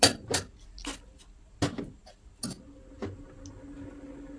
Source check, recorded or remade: recorded